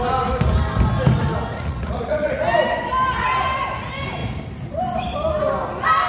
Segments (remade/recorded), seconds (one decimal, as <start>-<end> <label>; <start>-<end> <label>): 0.0-1.5 recorded; 1.5-2.4 remade; 2.4-6.1 recorded